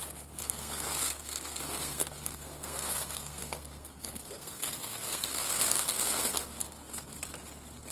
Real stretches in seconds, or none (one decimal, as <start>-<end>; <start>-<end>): 7.1-7.9